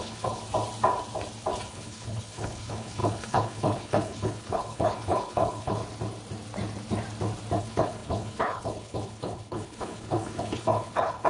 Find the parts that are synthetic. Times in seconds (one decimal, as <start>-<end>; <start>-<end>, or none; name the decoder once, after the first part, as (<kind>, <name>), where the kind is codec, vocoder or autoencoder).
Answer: 0.0-0.4 (codec, HILCodec); 1.7-5.8; 7.6-11.3